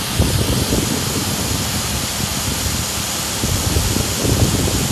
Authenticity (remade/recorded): recorded